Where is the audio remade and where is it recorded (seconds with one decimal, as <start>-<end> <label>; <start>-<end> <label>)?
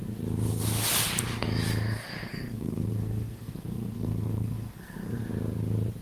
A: 0.0-2.3 recorded; 2.3-5.2 remade; 5.2-6.0 recorded